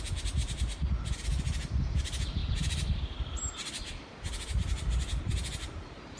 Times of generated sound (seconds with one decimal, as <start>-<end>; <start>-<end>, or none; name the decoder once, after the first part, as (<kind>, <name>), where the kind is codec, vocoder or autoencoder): none